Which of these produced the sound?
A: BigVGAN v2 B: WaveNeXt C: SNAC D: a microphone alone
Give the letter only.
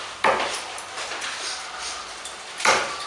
A